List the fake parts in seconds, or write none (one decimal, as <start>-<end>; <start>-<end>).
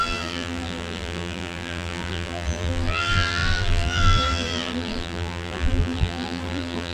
0.0-6.9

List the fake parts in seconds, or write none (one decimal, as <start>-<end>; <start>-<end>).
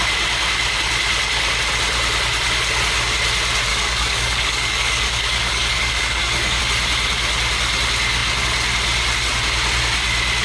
3.7-6.6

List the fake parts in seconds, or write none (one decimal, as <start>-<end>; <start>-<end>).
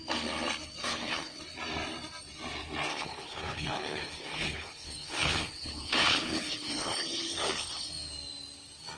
0.8-1.4; 2.9-7.9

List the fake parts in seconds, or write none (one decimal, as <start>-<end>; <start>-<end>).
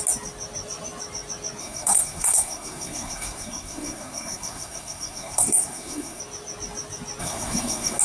1.6-6.2; 7.2-8.0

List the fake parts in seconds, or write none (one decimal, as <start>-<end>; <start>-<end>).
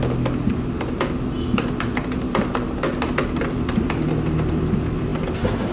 none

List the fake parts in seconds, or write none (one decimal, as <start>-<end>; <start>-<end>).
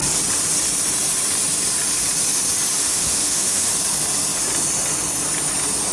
2.8-3.7